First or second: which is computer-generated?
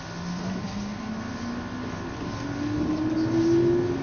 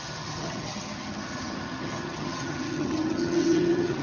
second